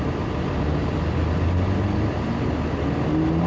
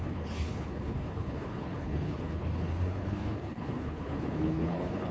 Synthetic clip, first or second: second